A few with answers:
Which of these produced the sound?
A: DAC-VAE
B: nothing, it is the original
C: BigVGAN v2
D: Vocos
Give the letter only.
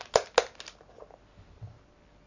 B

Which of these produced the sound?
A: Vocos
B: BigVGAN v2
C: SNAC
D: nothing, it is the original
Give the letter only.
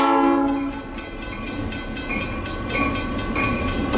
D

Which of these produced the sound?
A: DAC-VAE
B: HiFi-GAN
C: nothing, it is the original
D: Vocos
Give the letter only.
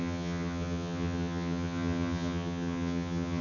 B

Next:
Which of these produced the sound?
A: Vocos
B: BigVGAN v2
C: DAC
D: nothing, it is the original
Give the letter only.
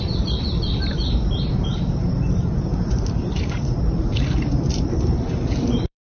B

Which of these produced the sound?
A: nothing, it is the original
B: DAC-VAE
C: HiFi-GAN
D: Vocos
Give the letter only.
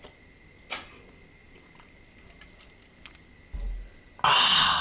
A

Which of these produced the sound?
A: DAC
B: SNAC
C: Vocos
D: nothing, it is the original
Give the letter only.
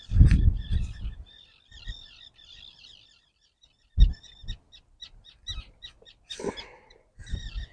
D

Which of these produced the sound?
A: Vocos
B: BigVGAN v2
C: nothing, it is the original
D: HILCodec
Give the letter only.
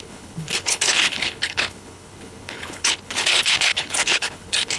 D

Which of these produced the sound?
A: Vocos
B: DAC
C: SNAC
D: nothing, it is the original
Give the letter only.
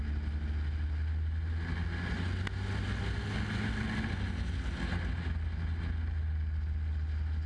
D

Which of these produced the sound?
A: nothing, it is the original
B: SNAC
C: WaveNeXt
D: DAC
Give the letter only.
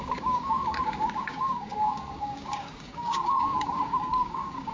D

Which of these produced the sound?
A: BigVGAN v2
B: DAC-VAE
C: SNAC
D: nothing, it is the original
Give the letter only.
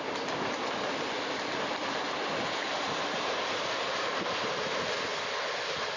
D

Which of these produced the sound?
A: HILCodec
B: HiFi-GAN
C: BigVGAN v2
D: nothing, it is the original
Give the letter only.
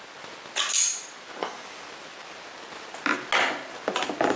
D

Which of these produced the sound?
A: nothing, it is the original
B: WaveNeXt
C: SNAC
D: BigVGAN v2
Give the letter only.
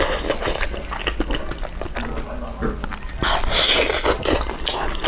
A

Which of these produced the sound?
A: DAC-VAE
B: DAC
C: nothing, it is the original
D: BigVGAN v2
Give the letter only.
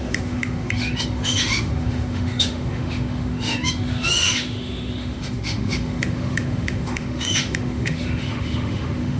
A